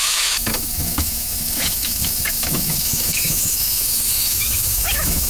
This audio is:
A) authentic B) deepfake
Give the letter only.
B